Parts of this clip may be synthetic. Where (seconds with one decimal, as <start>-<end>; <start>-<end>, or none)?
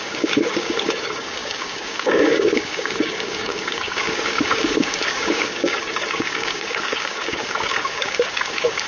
0.0-8.9